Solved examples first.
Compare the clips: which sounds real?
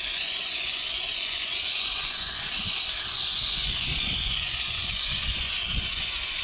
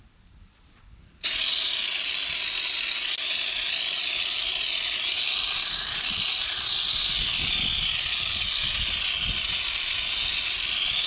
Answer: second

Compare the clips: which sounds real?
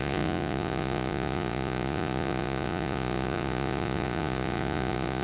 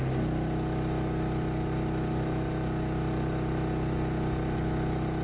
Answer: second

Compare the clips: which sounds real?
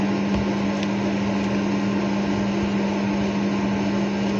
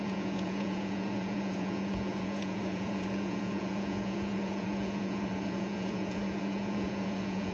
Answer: first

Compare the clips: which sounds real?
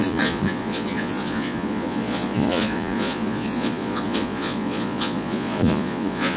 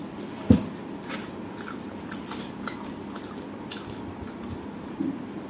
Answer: second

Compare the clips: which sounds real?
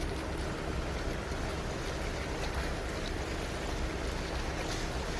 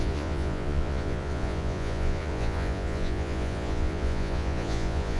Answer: first